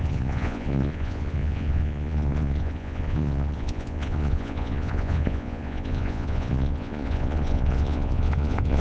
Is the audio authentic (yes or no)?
no